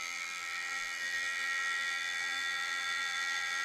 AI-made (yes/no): yes